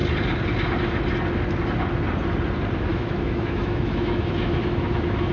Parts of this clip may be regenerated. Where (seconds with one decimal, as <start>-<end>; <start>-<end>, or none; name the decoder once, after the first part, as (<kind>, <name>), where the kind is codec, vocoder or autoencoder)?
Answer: 2.9-5.3 (autoencoder, DAC-VAE)